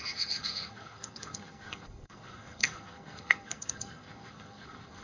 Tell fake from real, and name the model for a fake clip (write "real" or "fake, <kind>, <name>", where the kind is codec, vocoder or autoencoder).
fake, codec, SNAC